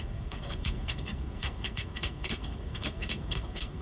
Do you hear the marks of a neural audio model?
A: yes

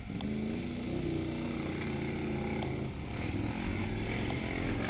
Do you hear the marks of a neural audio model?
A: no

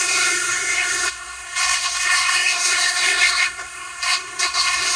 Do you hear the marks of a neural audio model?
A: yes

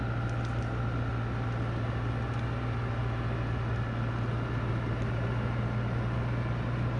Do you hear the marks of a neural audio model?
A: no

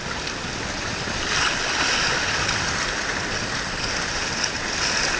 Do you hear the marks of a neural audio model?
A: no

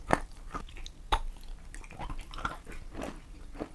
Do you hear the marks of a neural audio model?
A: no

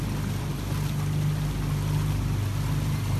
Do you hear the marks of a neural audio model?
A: no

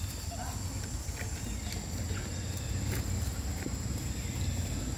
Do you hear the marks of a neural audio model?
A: no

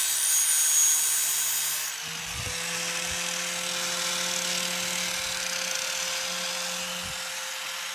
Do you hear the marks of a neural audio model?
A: no